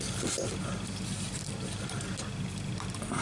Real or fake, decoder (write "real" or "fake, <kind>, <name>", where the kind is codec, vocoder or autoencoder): real